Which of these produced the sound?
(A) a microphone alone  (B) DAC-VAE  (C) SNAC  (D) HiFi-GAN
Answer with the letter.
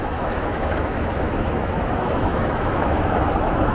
B